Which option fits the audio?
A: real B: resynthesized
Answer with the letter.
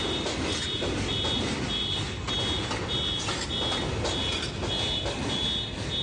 A